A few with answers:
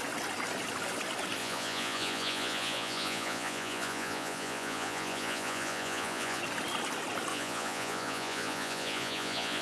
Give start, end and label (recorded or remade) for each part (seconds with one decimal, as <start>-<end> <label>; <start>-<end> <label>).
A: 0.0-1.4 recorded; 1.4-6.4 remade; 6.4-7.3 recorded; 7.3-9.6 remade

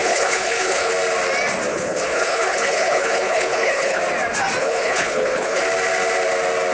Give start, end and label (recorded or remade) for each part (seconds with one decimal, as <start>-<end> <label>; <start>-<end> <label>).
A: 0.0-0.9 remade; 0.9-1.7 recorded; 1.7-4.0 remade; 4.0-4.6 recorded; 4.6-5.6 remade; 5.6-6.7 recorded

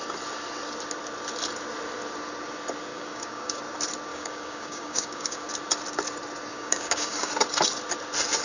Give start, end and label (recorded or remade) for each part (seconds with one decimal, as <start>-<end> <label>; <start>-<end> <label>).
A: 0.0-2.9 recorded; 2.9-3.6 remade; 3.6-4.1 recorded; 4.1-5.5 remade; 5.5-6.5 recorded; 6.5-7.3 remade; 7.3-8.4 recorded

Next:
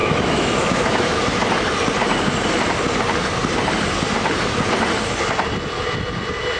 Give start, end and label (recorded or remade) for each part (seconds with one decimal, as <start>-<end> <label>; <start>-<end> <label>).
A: 0.0-1.2 remade; 1.2-6.6 recorded

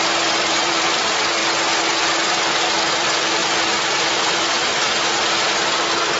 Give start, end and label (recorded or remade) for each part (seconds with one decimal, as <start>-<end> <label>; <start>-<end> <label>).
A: 0.0-1.4 remade; 1.4-2.9 recorded; 2.9-3.4 remade; 3.4-4.1 recorded; 4.1-4.6 remade; 4.6-5.8 recorded; 5.8-6.2 remade

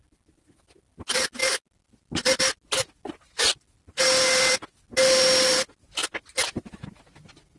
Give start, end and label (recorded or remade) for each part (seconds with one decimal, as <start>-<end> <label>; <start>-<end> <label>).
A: 0.0-7.6 recorded

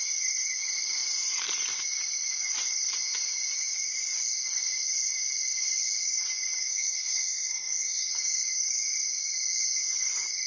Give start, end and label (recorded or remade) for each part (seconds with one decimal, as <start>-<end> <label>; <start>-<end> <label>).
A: 0.0-6.6 recorded; 6.6-8.1 remade; 8.1-10.5 recorded

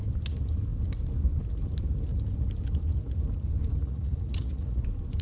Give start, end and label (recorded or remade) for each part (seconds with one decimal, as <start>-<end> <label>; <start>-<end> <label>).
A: 0.0-3.8 recorded; 3.8-4.8 remade; 4.8-5.2 recorded